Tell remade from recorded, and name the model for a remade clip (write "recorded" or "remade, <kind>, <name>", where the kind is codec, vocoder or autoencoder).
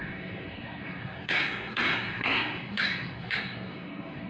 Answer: remade, codec, SNAC